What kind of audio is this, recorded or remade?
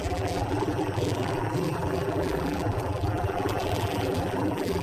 remade